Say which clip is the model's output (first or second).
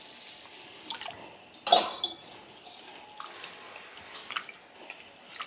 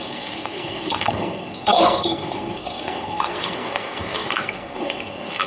second